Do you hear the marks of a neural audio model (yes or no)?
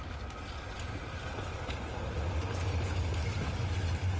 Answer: no